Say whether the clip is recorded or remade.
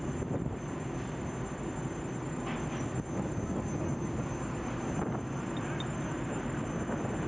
recorded